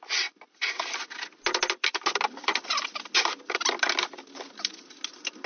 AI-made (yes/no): no